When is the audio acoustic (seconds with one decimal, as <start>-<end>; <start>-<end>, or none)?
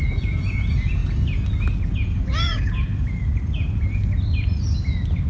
1.0-1.9; 2.9-5.3